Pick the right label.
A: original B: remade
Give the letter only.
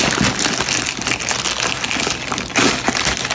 A